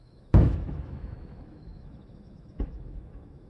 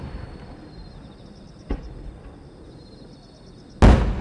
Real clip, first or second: second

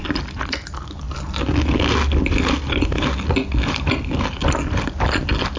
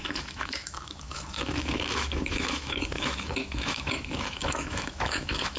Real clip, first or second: first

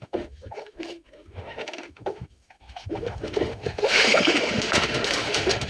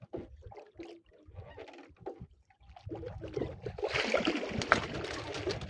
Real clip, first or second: second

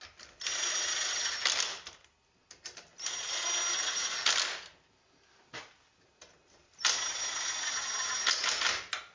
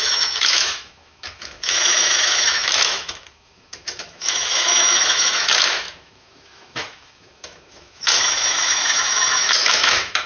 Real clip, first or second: first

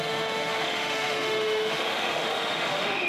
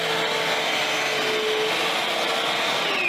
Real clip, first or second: second